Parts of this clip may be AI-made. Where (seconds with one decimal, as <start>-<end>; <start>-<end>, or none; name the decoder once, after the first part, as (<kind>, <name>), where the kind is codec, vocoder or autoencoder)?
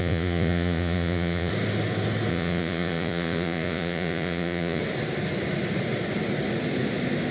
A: 0.0-1.5 (vocoder, Vocos); 2.3-4.8